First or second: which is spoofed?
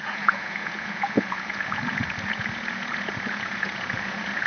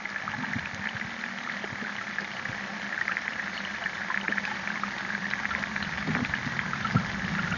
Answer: first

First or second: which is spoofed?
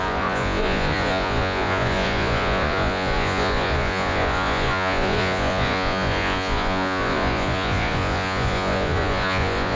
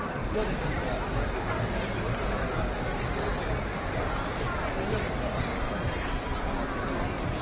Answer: first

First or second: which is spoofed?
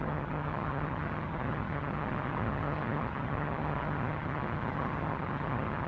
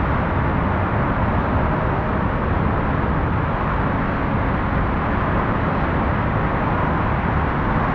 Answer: first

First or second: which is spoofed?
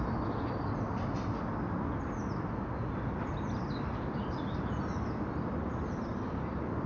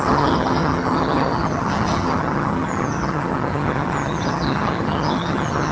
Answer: second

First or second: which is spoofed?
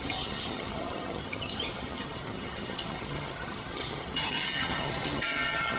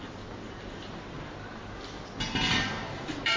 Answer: first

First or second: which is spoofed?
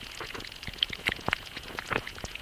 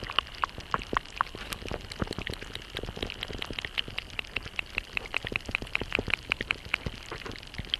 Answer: first